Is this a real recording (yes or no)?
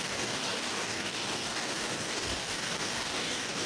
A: no